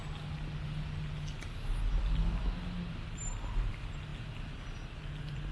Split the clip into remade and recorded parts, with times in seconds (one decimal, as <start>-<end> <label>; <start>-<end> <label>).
0.0-5.5 recorded